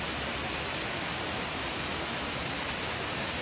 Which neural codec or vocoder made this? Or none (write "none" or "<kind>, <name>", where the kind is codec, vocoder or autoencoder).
none